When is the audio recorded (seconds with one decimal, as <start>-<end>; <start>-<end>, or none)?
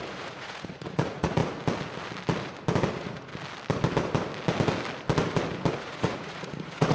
1.4-2.9; 3.3-5.8